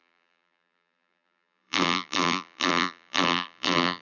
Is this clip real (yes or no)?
no